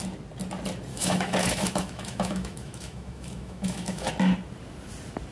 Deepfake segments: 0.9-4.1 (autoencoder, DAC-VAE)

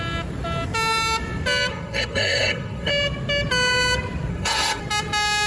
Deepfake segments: 1.7-2.9 (codec, SNAC); 4.3-4.8

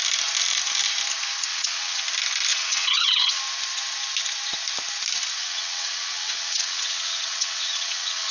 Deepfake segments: 1.5-2.0 (vocoder, WaveNeXt); 2.5-3.4; 5.4-8.3

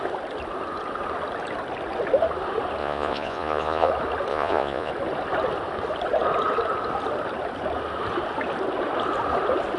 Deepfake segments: 2.8-3.9 (vocoder, Vocos); 4.3-4.9